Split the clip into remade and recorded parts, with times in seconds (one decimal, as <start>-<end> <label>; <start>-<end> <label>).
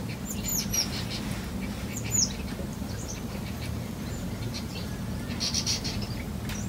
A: 0.0-2.7 recorded; 2.7-4.9 remade; 4.9-5.7 recorded; 5.7-6.3 remade; 6.3-6.7 recorded